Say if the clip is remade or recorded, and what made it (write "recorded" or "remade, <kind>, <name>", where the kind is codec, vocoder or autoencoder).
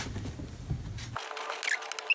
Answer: recorded